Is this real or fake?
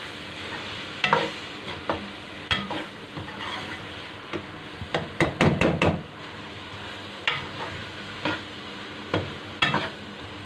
fake